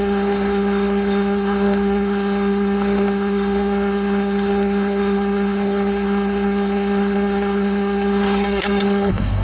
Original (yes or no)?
no